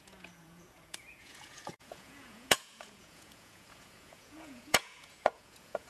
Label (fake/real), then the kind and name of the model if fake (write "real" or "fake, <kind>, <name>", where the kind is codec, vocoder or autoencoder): fake, vocoder, Vocos